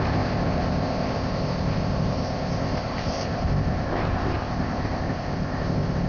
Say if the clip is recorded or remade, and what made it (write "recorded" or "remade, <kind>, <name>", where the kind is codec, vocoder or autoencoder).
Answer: remade, codec, ZipCodec